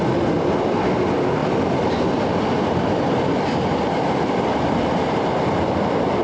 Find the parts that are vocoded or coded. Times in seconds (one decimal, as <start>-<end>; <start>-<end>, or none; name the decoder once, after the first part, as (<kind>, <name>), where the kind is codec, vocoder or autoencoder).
4.5-5.3 (vocoder, BigVGAN v2)